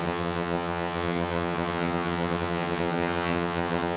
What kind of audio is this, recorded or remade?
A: remade